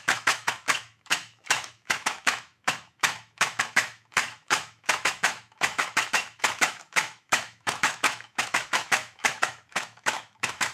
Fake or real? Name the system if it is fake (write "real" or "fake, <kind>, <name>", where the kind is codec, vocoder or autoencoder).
fake, autoencoder, DAC-VAE